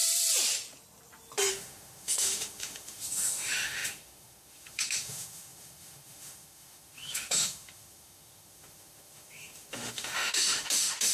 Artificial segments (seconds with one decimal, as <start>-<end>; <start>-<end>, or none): 1.5-11.1